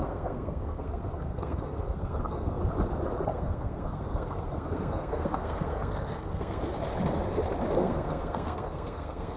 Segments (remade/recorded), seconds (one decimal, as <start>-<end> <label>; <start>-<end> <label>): 0.0-2.6 remade; 2.6-3.3 recorded; 3.3-6.6 remade; 6.6-7.8 recorded; 7.8-9.4 remade